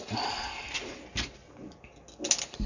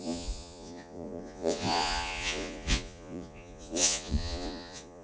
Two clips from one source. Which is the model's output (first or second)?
second